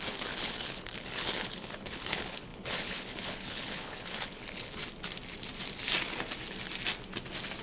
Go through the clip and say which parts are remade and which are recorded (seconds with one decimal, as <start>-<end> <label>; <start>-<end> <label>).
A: 0.0-4.8 remade; 4.8-7.6 recorded